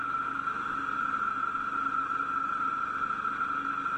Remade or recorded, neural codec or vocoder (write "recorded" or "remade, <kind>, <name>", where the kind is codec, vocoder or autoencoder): recorded